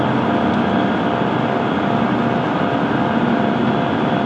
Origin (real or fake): real